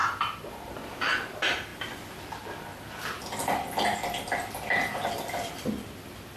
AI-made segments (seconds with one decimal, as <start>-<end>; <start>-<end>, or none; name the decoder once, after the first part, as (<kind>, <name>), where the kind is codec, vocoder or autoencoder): none